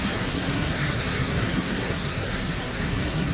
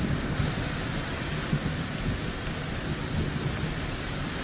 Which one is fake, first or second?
first